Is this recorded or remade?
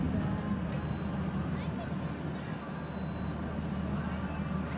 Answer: recorded